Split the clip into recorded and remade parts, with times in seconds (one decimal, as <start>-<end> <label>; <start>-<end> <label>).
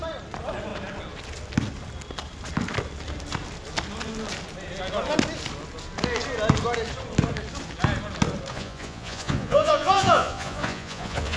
0.0-8.5 recorded; 8.5-11.4 remade